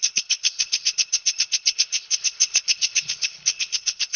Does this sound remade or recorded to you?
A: remade